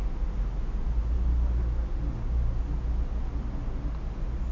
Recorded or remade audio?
recorded